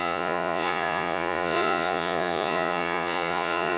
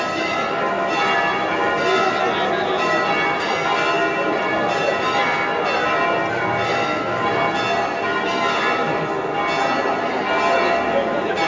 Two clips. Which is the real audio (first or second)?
second